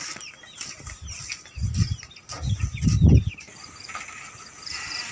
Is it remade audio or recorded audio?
recorded